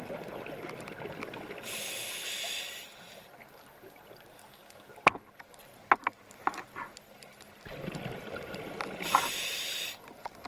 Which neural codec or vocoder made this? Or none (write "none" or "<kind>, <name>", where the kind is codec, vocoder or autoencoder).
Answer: none